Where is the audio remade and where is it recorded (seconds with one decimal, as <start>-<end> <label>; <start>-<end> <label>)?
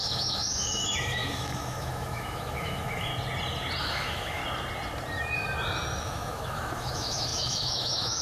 0.0-3.1 remade; 3.1-3.8 recorded; 3.8-4.4 remade; 4.4-6.0 recorded; 6.0-8.2 remade